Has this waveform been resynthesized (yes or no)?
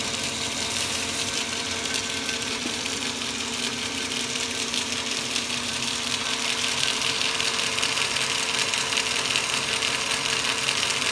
yes